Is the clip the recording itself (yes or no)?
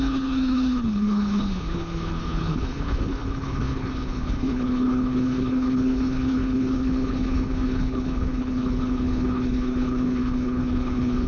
no